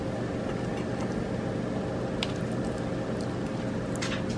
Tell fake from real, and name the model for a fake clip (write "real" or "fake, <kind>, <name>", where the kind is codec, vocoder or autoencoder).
real